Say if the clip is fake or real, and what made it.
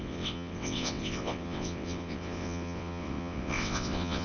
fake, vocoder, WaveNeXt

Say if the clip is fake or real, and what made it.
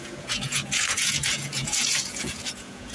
fake, vocoder, Vocos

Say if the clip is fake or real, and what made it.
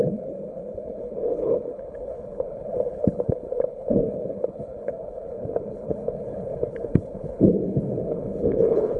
fake, codec, HILCodec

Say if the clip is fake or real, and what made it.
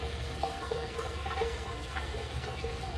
fake, codec, SNAC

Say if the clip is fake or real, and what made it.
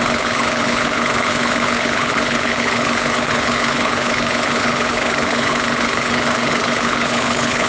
fake, codec, HILCodec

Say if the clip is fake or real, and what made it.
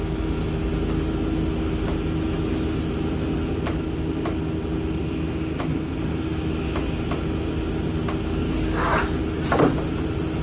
real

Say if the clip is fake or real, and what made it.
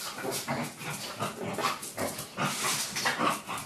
real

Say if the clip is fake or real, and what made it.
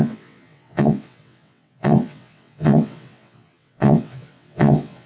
fake, vocoder, WaveNeXt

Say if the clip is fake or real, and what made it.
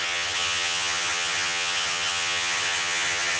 fake, vocoder, HiFi-GAN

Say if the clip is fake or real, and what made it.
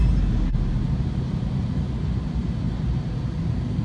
real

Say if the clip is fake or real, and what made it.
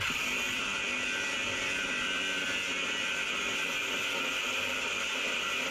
real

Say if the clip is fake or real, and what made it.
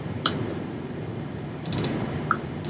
fake, vocoder, BigVGAN v2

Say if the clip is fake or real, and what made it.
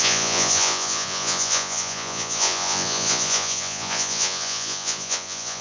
fake, vocoder, Vocos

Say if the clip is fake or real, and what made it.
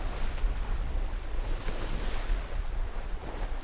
real